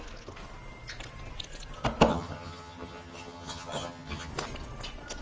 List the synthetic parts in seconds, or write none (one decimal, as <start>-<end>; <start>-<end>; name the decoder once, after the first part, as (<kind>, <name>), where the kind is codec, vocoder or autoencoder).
2.1-4.3 (vocoder, HiFi-GAN)